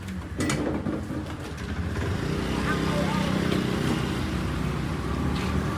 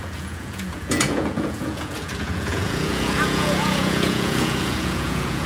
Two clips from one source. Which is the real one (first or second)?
first